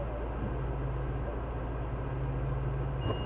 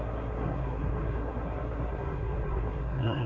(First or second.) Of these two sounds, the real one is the first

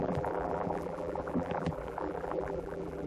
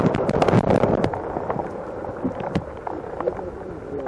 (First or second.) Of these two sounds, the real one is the second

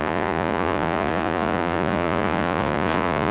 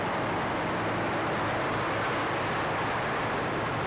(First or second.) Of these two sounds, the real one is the second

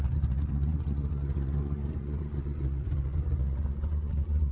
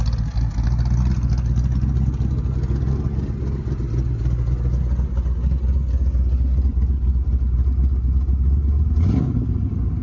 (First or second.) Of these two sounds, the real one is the second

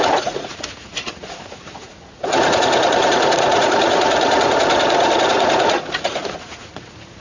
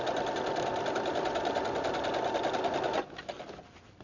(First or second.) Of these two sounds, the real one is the second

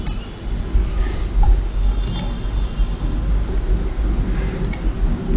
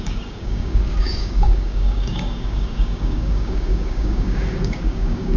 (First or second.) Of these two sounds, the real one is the first